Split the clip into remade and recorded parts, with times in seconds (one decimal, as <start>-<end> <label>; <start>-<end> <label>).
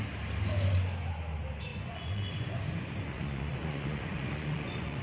0.0-1.7 recorded; 1.7-5.0 remade